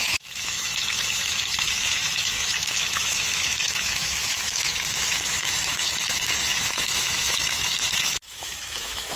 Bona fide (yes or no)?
no